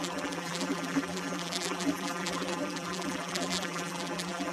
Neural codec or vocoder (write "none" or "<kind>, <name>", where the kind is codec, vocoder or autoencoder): vocoder, BigVGAN v2